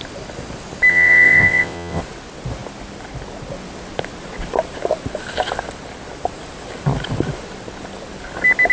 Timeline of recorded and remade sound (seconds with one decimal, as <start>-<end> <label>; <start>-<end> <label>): 0.0-0.9 recorded; 0.9-2.0 remade; 2.0-8.7 recorded